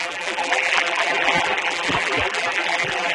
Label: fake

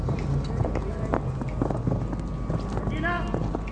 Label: real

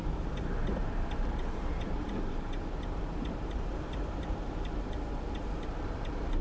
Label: fake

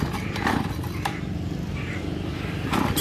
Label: real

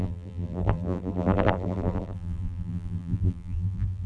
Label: fake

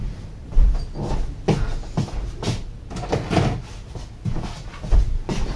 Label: real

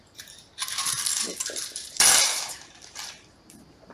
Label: fake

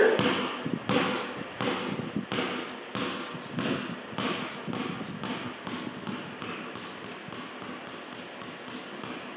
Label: real